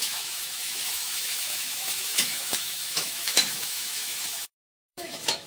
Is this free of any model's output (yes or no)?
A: no